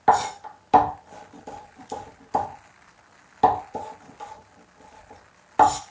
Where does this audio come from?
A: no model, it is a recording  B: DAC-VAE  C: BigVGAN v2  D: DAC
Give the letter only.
A